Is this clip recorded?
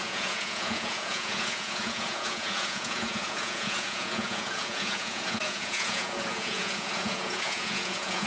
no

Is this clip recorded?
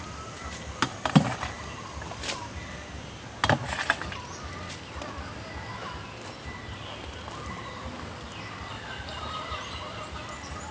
yes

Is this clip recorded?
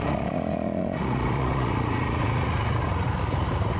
no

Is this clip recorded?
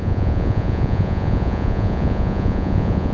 no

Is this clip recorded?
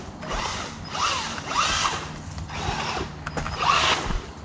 yes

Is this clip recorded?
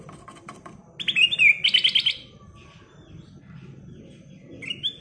yes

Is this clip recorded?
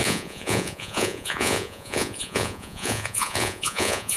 no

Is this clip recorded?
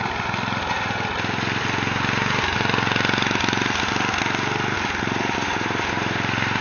yes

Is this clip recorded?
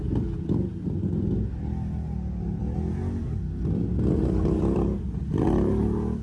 yes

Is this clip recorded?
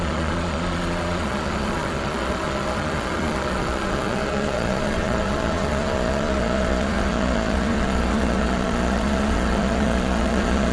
no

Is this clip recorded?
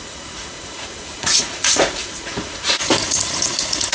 no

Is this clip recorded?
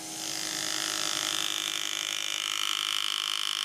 yes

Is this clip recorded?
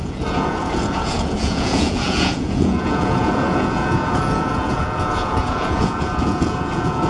no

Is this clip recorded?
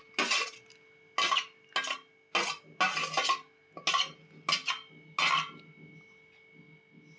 yes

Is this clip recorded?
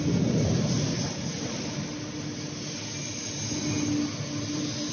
yes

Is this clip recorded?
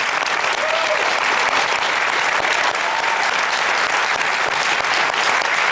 yes